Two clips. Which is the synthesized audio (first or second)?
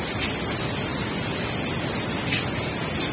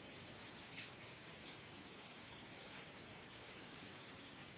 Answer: second